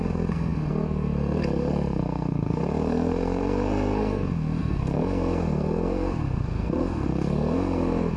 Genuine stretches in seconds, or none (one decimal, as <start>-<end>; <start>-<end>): none